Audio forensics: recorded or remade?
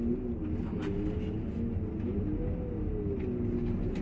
recorded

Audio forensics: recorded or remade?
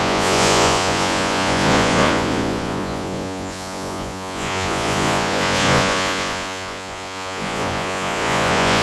remade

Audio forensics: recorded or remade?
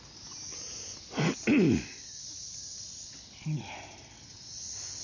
recorded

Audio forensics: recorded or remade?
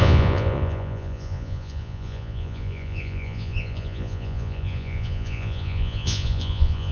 remade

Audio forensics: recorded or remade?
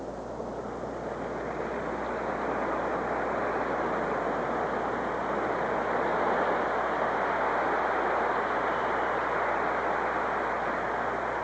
recorded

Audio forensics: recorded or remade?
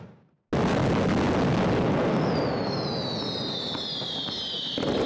recorded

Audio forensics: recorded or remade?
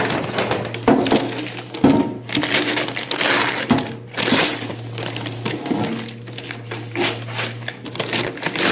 recorded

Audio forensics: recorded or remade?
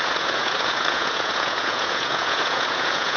remade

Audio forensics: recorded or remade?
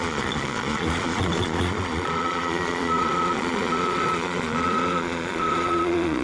remade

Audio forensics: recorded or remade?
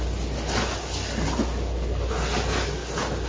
recorded